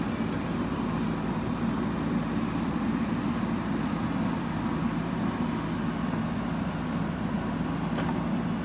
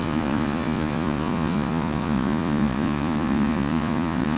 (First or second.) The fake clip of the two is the second